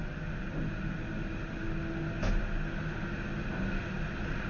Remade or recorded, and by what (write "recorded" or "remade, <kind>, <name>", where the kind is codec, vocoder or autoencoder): recorded